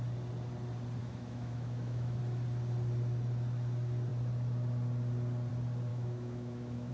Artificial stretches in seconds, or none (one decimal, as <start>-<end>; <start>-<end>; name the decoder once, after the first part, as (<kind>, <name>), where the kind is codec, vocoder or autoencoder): 1.0-2.2 (autoencoder, DAC-VAE); 5.9-6.9